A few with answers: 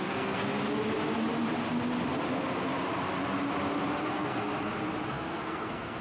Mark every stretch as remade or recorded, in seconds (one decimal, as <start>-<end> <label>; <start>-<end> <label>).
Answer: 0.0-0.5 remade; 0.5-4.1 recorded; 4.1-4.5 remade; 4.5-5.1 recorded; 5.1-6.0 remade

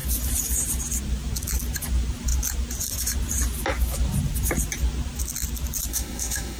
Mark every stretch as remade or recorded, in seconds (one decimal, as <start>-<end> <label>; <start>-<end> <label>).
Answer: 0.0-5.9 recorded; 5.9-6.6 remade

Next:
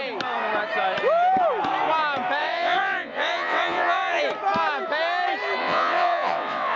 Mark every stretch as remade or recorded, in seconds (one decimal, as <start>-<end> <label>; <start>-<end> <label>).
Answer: 0.0-2.4 recorded; 2.4-4.2 remade; 4.2-5.6 recorded; 5.6-6.8 remade

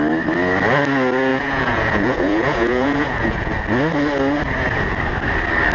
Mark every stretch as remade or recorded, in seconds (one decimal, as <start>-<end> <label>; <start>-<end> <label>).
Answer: 0.0-1.3 recorded; 1.3-3.5 remade; 3.5-5.7 recorded

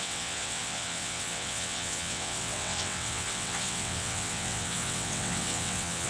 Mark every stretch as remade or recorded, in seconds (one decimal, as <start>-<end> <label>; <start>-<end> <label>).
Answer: 0.0-6.1 remade

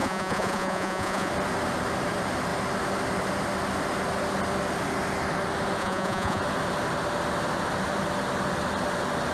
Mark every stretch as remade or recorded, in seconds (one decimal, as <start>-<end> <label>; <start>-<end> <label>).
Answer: 0.0-1.3 remade; 1.3-5.8 recorded; 5.8-6.4 remade; 6.4-9.3 recorded

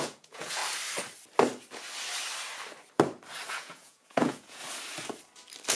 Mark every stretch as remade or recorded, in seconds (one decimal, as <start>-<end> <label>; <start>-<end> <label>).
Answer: 0.0-0.6 remade; 0.6-3.5 recorded; 3.5-4.6 remade; 4.6-5.7 recorded